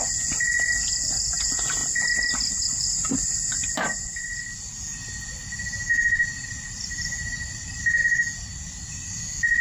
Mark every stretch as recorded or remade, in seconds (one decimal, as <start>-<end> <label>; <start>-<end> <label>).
0.0-9.6 recorded

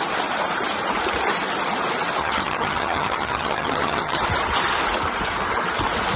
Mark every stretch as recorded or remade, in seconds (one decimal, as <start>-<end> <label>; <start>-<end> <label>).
0.0-2.2 recorded; 2.2-4.2 remade; 4.2-6.2 recorded

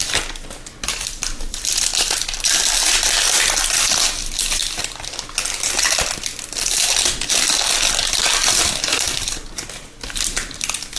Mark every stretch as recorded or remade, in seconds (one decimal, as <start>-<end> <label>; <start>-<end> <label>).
0.0-11.0 recorded

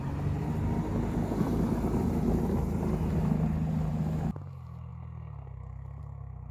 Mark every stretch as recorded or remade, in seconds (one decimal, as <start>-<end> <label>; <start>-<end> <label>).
0.0-6.5 recorded

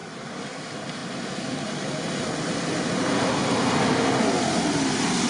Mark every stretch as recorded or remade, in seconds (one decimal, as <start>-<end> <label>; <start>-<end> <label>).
0.0-5.3 recorded

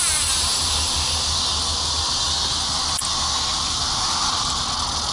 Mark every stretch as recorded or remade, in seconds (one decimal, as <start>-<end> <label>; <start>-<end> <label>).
0.0-5.1 recorded

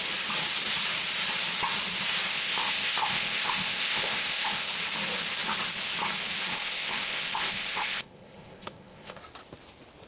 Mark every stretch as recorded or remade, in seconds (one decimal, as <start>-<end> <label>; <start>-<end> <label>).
0.0-2.3 recorded; 2.3-4.7 remade; 4.7-6.5 recorded; 6.5-9.2 remade; 9.2-10.1 recorded